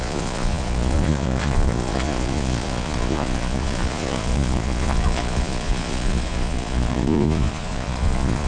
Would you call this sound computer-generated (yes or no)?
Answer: yes